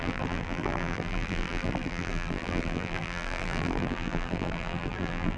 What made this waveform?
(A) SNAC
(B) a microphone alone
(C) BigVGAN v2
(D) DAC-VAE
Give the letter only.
C